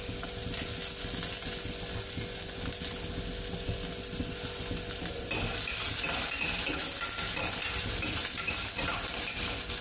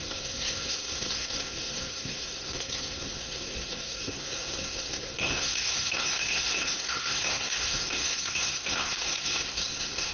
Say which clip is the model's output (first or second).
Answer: second